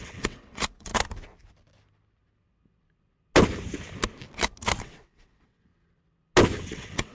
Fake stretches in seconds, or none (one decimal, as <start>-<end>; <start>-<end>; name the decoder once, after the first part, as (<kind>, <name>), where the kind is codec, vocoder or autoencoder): 0.0-0.9 (vocoder, WaveNeXt); 4.8-5.7; 6.6-7.1